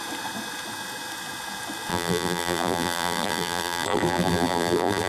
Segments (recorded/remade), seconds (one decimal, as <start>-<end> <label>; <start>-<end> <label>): 0.0-1.9 recorded; 1.9-5.1 remade